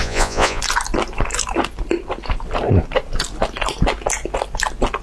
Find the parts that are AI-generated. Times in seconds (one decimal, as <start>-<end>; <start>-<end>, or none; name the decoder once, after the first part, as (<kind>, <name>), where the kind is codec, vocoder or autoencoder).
0.0-0.6 (vocoder, Vocos)